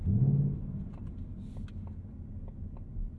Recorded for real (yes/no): yes